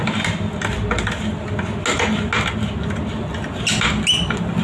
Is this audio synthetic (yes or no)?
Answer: no